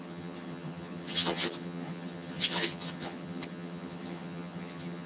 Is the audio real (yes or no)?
no